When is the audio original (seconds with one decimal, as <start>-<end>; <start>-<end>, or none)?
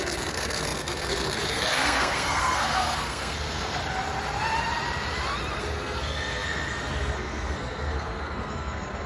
3.8-5.6